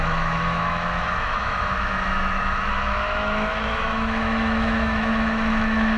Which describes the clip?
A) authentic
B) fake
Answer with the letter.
B